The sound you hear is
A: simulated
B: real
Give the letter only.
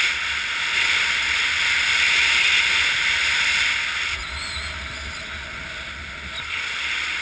B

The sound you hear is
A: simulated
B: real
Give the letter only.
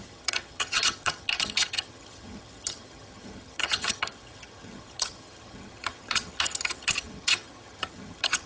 A